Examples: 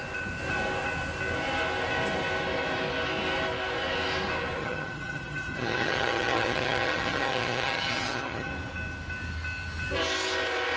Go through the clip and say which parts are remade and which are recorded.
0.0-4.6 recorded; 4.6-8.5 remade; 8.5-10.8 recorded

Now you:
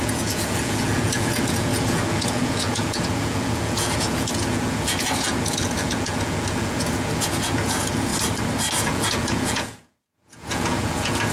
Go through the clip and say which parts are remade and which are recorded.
0.0-8.1 remade; 8.1-8.8 recorded; 8.8-11.3 remade